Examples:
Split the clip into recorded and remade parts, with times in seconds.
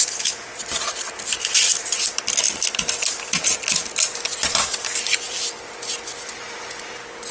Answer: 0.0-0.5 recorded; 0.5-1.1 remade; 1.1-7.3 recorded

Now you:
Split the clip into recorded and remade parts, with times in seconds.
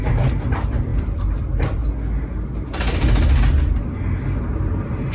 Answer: 0.0-0.9 remade; 0.9-1.4 recorded; 1.4-1.8 remade; 1.8-5.1 recorded